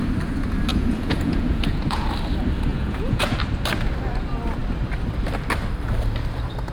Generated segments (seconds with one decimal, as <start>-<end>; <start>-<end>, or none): 0.7-2.0; 2.7-3.4